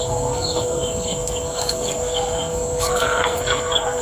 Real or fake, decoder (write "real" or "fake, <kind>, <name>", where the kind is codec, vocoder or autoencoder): fake, codec, SNAC